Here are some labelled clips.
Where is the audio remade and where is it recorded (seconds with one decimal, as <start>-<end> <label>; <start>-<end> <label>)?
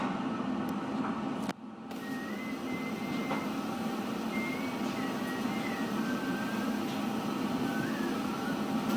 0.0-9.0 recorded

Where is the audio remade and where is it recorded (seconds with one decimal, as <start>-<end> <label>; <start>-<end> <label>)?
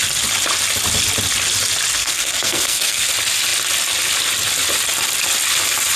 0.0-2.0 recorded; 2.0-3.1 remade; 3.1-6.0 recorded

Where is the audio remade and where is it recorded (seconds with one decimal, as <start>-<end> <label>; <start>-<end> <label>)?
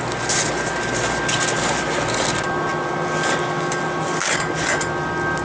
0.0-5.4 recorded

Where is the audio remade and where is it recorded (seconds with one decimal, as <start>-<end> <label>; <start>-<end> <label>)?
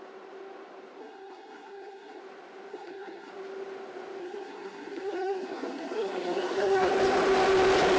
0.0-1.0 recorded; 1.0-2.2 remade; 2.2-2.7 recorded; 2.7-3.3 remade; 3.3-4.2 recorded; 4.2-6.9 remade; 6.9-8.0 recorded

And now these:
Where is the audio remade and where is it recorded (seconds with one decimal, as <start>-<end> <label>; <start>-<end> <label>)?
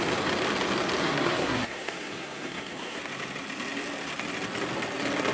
0.0-1.0 recorded; 1.0-3.0 remade; 3.0-5.3 recorded